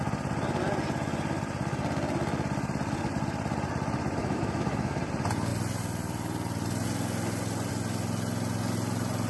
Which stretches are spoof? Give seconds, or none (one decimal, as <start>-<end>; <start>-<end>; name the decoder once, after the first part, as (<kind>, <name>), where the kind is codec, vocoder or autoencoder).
4.2-5.0 (autoencoder, DAC-VAE)